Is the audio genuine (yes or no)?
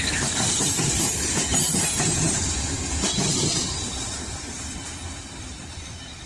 no